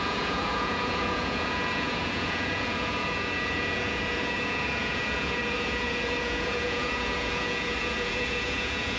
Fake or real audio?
fake